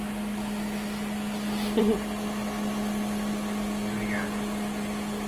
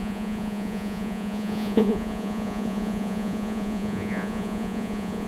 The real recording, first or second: first